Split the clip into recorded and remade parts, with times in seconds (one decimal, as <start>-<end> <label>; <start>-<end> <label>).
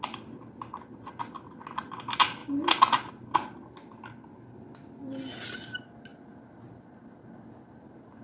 0.0-8.2 recorded